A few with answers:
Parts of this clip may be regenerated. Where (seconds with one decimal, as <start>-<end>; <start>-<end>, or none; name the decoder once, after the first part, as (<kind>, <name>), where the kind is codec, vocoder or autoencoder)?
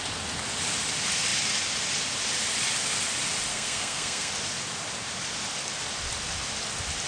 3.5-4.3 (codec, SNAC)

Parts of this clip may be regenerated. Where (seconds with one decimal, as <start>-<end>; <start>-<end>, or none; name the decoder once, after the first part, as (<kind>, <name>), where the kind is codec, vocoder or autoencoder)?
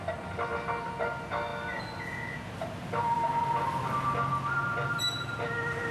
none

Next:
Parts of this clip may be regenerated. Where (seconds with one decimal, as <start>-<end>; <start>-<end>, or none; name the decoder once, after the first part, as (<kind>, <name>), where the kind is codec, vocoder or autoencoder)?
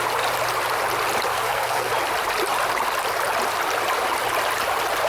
1.3-1.9 (codec, SNAC)